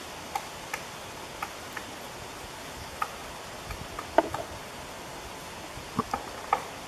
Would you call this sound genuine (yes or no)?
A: yes